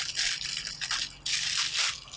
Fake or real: real